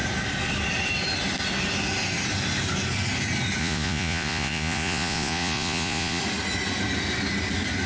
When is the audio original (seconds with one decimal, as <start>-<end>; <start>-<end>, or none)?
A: 0.0-3.6; 6.2-7.9